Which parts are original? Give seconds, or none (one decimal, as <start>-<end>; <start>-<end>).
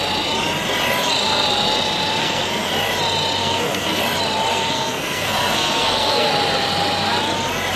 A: 0.0-2.2; 2.7-3.4; 4.0-4.5; 6.3-7.8